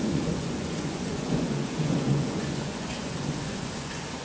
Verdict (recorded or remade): remade